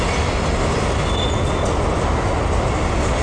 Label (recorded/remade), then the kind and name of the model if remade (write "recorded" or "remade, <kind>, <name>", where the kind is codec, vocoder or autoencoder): recorded